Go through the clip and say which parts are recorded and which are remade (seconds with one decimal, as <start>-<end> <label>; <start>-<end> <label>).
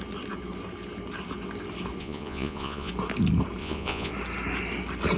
0.0-2.0 recorded; 2.0-2.9 remade; 2.9-3.6 recorded; 3.6-4.1 remade; 4.1-5.2 recorded